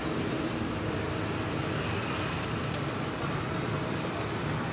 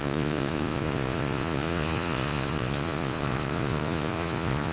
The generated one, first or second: second